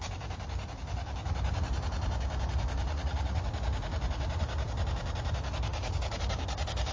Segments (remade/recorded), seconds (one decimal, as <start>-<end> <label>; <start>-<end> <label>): 0.0-2.9 recorded; 2.9-3.4 remade; 3.4-6.9 recorded